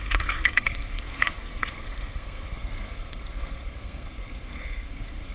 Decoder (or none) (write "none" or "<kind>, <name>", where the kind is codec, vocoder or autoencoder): codec, SNAC